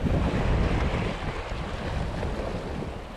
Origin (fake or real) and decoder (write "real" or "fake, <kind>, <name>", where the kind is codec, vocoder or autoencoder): real